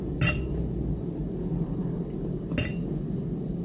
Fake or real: real